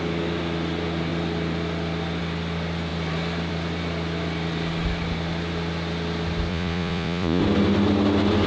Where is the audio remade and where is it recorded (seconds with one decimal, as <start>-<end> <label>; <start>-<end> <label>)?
0.0-6.5 recorded; 6.5-7.4 remade; 7.4-8.5 recorded